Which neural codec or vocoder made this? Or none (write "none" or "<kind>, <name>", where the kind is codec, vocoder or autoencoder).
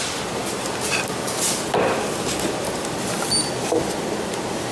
none